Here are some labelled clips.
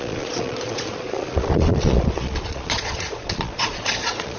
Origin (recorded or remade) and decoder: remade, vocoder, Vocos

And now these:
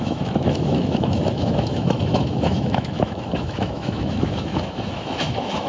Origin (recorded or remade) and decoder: remade, autoencoder, DAC-VAE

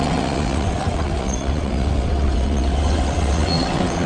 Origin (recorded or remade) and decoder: remade, vocoder, WaveNeXt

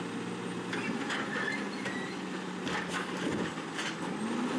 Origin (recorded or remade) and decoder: recorded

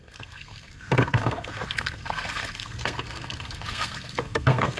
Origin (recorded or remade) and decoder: remade, codec, SNAC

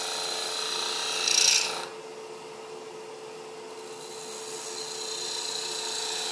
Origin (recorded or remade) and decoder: recorded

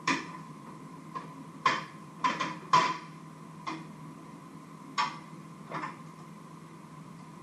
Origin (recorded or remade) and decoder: remade, vocoder, BigVGAN v2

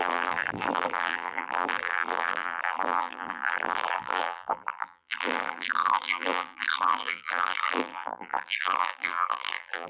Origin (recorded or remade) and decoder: remade, vocoder, BigVGAN v2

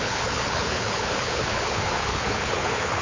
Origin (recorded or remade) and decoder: remade, codec, HILCodec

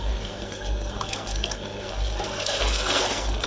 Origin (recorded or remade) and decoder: remade, codec, SNAC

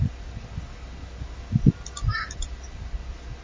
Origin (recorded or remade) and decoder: recorded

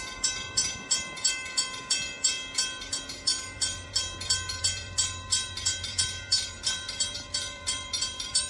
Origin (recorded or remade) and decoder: remade, vocoder, BigVGAN v2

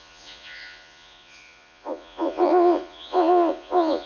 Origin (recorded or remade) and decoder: remade, vocoder, Vocos